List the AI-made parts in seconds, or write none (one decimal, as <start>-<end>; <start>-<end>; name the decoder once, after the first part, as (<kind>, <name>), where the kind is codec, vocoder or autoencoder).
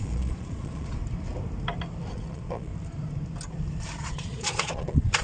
0.0-1.0 (vocoder, Vocos); 2.1-2.7; 4.0-5.2